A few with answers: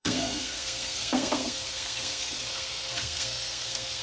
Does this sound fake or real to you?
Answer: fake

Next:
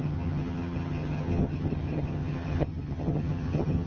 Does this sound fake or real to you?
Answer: fake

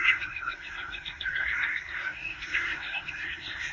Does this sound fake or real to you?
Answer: fake